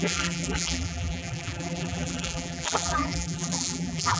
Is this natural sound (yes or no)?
no